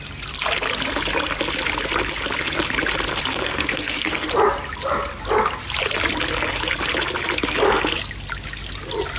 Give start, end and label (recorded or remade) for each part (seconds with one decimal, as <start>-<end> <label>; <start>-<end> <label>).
0.0-3.3 recorded; 3.3-4.3 remade; 4.3-9.2 recorded

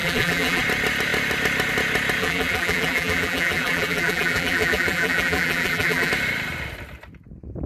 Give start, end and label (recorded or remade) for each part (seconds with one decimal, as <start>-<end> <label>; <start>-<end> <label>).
0.0-0.6 remade; 0.6-2.2 recorded; 2.2-6.1 remade; 6.1-7.7 recorded

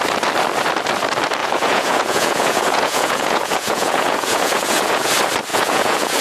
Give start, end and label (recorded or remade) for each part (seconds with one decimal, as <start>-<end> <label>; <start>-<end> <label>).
0.0-1.4 recorded; 1.4-5.1 remade; 5.1-5.5 recorded; 5.5-6.2 remade

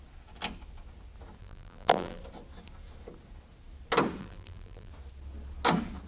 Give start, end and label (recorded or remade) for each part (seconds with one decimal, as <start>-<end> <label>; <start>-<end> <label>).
0.0-1.4 recorded; 1.4-2.2 remade; 2.2-4.2 recorded; 4.2-4.9 remade; 4.9-6.1 recorded

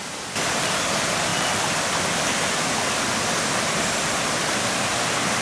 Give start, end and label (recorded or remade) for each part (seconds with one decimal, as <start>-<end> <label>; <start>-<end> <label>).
0.0-5.4 recorded